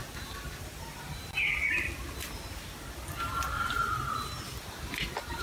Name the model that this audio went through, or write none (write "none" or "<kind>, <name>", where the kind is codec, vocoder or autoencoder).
none